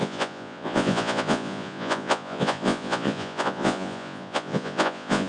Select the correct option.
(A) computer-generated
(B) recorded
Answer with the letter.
A